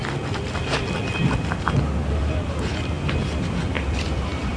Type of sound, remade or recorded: recorded